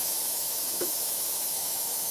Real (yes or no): no